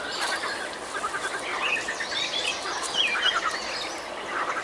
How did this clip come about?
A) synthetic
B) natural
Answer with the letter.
A